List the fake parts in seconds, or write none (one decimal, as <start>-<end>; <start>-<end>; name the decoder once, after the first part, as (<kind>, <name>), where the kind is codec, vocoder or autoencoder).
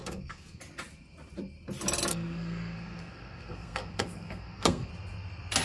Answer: 0.0-0.6 (codec, SNAC); 2.1-4.9